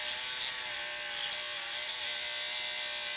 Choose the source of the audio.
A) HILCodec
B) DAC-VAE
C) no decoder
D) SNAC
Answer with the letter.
C